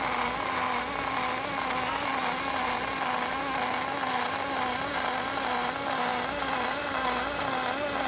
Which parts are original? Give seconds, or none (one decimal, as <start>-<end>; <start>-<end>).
0.0-6.1; 6.9-8.1